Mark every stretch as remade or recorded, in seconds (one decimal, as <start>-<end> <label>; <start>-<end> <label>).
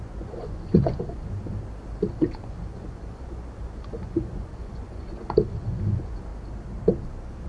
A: 0.0-1.5 remade; 1.5-2.2 recorded; 2.2-6.3 remade; 6.3-7.1 recorded; 7.1-7.5 remade